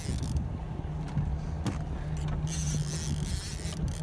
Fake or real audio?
real